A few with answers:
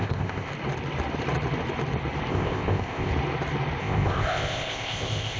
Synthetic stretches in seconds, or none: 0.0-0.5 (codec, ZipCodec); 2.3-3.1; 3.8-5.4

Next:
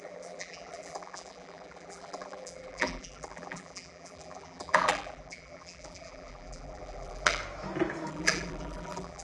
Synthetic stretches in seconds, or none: 0.0-7.4 (vocoder, BigVGAN v2); 8.1-9.2

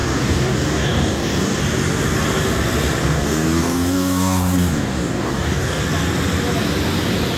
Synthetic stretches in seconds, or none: 0.0-1.6 (codec, DAC); 3.0-5.8

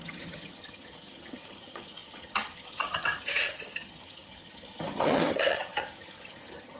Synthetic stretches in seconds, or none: 0.0-6.8 (vocoder, HiFi-GAN)

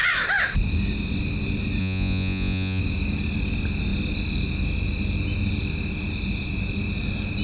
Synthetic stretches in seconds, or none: 1.8-2.8 (vocoder, Vocos)

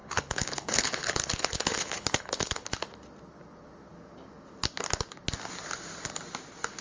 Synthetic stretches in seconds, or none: 0.0-2.7 (codec, HILCodec)

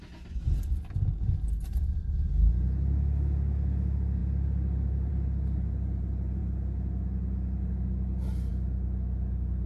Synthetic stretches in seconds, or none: none

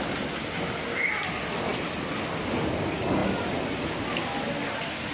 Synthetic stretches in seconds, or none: none